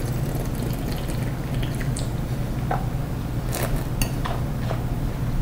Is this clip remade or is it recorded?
recorded